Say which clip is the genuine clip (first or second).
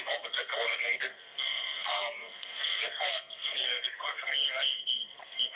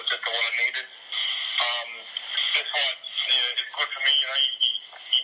second